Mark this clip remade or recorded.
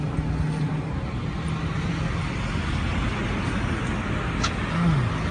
recorded